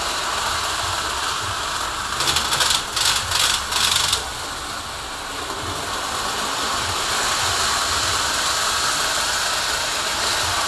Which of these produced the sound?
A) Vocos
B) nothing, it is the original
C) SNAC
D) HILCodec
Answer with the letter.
B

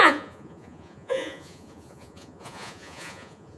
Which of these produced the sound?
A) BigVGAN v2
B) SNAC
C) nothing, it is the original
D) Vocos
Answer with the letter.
D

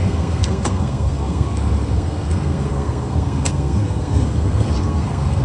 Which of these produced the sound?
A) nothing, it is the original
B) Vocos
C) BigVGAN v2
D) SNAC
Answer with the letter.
D